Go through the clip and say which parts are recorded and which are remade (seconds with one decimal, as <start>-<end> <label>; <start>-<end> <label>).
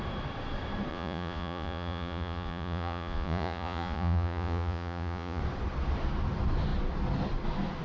0.0-0.9 recorded; 0.9-5.4 remade; 5.4-7.8 recorded